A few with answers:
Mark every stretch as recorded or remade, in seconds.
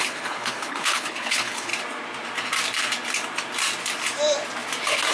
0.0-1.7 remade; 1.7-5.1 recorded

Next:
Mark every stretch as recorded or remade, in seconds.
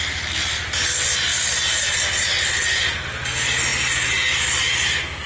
0.0-5.3 recorded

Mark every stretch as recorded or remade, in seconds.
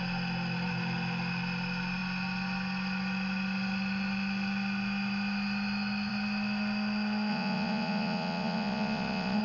0.0-7.3 recorded; 7.3-9.4 remade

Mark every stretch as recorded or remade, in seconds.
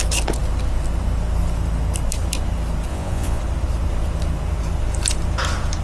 0.0-2.9 recorded; 2.9-3.4 remade; 3.4-5.8 recorded